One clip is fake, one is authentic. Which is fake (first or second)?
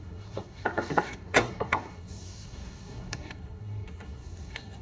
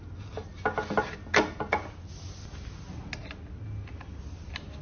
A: first